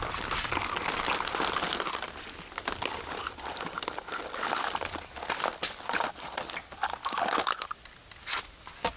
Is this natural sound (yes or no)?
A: yes